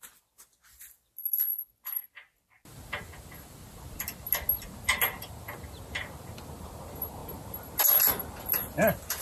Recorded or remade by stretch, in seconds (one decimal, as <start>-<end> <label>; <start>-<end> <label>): 0.0-9.2 recorded